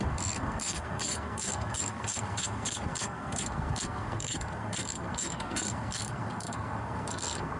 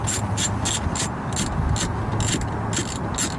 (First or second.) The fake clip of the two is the first